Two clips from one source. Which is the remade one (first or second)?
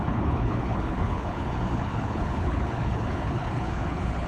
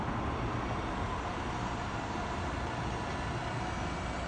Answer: first